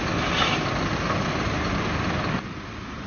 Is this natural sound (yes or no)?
yes